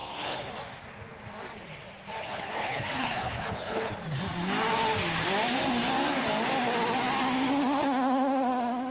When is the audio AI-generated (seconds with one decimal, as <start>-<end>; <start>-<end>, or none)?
0.0-0.5; 2.2-4.0